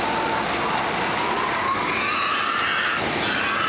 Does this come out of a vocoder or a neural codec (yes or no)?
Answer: no